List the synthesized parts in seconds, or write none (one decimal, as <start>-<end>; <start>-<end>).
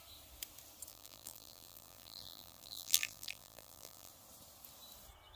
0.9-4.1